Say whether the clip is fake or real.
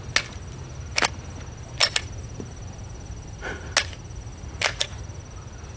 real